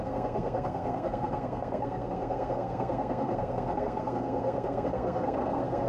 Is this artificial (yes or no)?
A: yes